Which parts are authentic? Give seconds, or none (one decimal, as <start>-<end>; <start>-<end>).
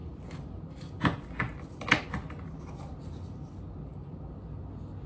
0.0-5.1